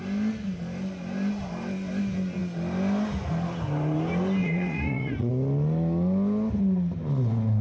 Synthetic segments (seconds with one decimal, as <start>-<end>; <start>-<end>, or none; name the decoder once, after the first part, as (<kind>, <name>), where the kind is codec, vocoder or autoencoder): 4.4-5.3 (vocoder, Vocos)